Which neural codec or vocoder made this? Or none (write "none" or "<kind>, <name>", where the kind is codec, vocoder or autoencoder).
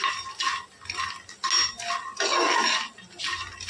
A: none